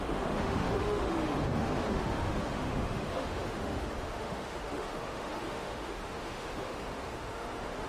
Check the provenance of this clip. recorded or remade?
remade